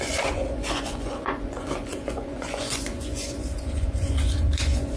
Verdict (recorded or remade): remade